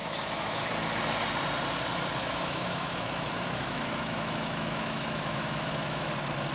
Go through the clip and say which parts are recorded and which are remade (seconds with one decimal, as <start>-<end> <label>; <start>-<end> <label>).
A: 0.0-0.7 remade; 0.7-2.2 recorded; 2.2-6.1 remade; 6.1-6.5 recorded